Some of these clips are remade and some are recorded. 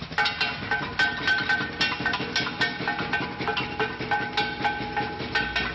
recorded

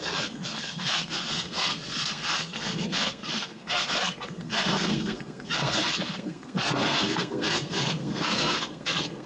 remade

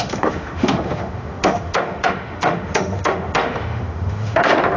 remade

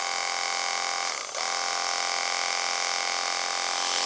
recorded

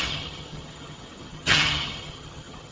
remade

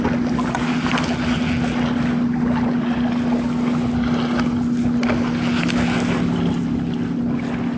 recorded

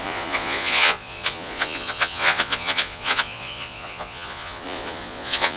remade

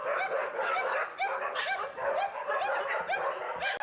recorded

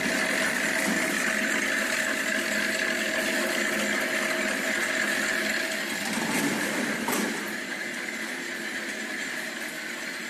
recorded